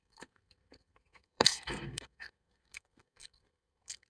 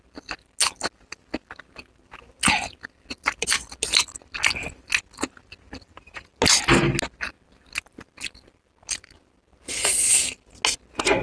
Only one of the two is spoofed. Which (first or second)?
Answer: first